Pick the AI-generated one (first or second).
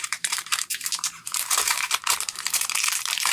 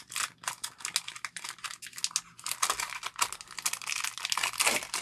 first